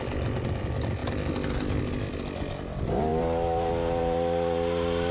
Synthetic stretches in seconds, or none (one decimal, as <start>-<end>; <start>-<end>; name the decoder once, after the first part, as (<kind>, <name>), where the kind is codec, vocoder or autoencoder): none